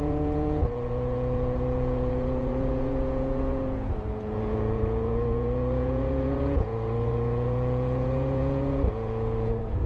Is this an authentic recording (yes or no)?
no